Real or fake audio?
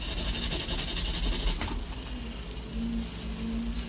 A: real